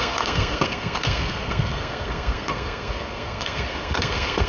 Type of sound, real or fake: fake